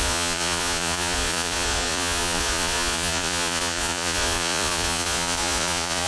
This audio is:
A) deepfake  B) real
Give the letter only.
A